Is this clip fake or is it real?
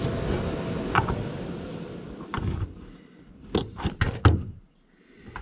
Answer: real